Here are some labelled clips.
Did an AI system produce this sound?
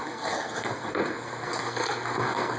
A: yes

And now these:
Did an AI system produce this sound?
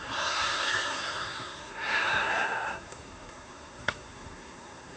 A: yes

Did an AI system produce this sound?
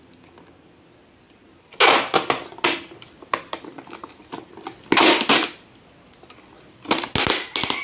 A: no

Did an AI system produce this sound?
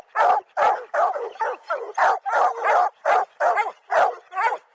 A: no